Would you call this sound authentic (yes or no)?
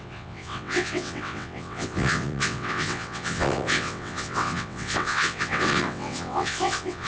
no